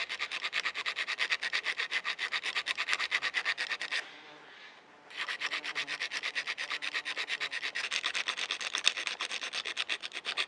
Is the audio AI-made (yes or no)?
no